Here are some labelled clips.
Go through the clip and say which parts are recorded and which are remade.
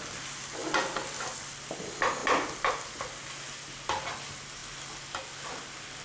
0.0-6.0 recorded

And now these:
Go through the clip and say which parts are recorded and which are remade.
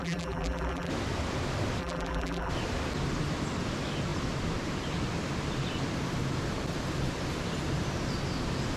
0.0-0.9 remade; 0.9-1.8 recorded; 1.8-2.5 remade; 2.5-8.8 recorded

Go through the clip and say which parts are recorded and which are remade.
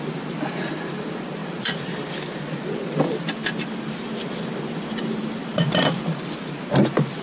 0.0-1.4 recorded; 1.4-2.1 remade; 2.1-3.4 recorded; 3.4-6.0 remade; 6.0-7.2 recorded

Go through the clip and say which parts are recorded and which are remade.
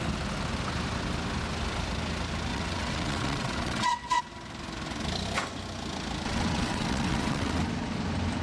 0.0-2.5 recorded; 2.5-4.2 remade; 4.2-6.3 recorded; 6.3-7.6 remade; 7.6-8.4 recorded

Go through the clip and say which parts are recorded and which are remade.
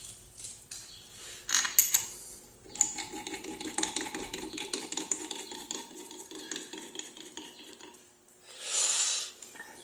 0.0-0.8 remade; 0.8-3.5 recorded; 3.5-9.8 remade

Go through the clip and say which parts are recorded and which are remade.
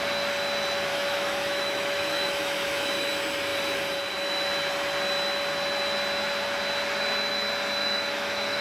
0.0-0.9 recorded; 0.9-3.1 remade; 3.1-7.8 recorded; 7.8-8.6 remade